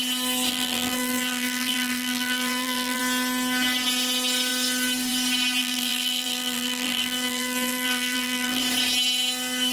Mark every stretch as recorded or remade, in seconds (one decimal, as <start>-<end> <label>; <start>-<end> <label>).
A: 0.0-0.5 recorded; 0.5-3.0 remade; 3.0-5.6 recorded; 5.6-8.6 remade; 8.6-9.7 recorded